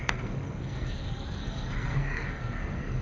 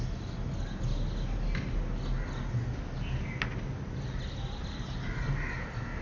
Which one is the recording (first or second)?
second